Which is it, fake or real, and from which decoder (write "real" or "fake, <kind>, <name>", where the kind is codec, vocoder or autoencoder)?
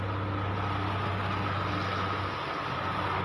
real